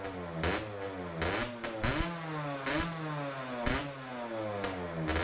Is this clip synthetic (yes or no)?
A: no